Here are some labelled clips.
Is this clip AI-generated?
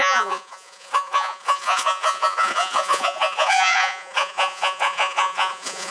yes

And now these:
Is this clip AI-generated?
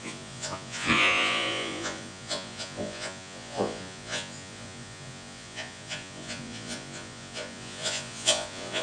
yes